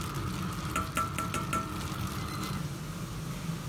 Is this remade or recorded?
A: recorded